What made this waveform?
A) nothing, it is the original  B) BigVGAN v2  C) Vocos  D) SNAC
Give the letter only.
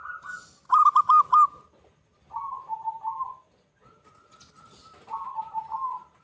A